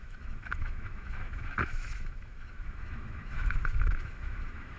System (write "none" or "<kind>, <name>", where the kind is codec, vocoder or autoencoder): autoencoder, DAC-VAE